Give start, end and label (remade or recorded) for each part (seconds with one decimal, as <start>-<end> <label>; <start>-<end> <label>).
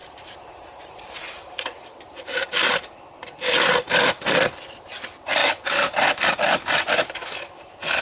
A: 0.0-2.7 remade; 2.7-8.0 recorded